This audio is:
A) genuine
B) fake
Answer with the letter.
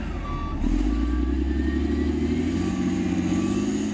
A